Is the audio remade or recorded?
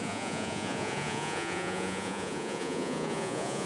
remade